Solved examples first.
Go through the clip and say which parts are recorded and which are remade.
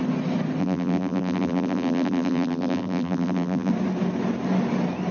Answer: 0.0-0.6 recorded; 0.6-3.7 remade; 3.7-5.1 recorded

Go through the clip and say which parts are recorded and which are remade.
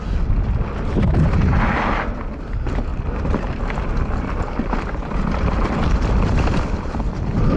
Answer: 0.0-2.9 recorded; 2.9-7.6 remade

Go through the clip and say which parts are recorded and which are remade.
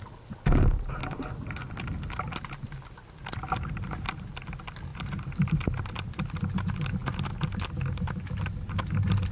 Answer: 0.0-4.9 recorded; 4.9-6.4 remade; 6.4-9.3 recorded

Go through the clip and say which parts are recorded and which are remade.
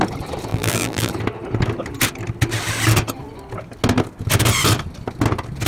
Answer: 0.0-0.5 recorded; 0.5-1.1 remade; 1.1-5.7 recorded